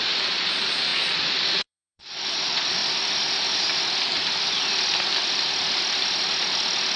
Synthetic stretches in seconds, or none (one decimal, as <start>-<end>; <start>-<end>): 0.0-2.8